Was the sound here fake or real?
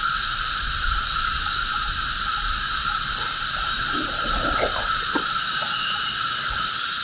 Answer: real